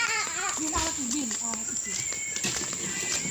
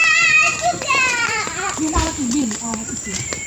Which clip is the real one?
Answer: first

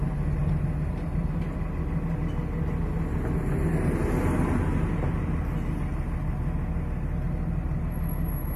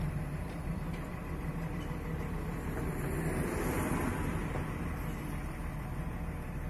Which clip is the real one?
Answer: first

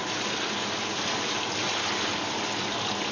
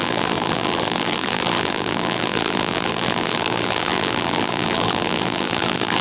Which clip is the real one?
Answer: first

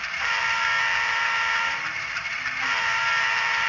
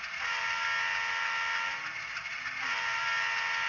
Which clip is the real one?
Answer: second